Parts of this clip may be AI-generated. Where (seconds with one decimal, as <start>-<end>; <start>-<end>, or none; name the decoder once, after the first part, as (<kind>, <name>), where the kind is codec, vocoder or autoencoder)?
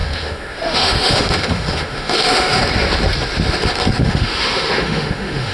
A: 0.0-2.6 (autoencoder, DAC-VAE); 4.0-5.5